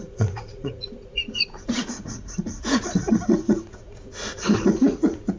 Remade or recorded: remade